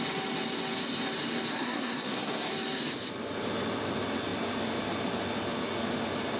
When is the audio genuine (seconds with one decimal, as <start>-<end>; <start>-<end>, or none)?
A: 0.0-1.5; 2.5-6.4